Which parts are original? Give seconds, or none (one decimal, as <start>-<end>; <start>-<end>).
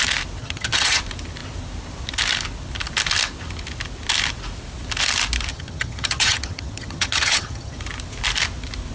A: 0.0-0.4; 1.0-5.5; 7.8-8.9